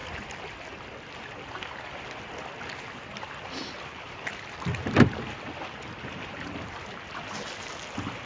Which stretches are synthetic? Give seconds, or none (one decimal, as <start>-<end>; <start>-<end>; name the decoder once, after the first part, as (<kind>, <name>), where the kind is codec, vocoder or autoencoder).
none